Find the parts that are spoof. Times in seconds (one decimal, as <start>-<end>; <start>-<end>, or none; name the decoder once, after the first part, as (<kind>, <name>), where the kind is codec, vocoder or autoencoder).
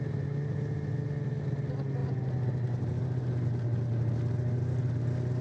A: none